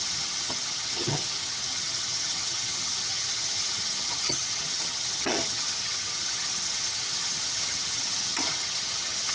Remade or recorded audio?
remade